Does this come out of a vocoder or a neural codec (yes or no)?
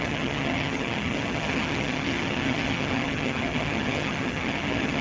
yes